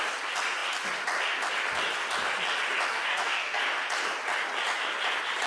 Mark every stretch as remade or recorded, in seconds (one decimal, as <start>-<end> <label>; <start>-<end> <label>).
0.0-2.9 recorded; 2.9-3.6 remade; 3.6-5.5 recorded